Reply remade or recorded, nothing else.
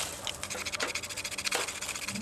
recorded